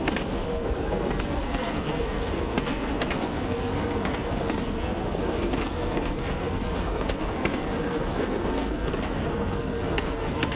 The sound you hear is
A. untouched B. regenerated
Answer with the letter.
B